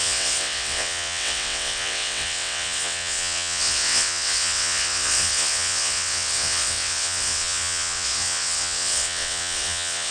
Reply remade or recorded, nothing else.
remade